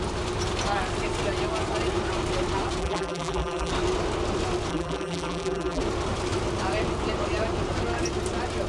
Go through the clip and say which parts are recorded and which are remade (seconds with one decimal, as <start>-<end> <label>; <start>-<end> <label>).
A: 0.0-2.8 recorded; 2.8-3.7 remade; 3.7-4.7 recorded; 4.7-5.8 remade; 5.8-8.7 recorded